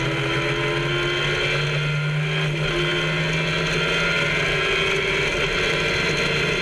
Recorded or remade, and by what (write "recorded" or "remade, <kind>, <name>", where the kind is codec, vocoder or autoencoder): recorded